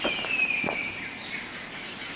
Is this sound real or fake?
fake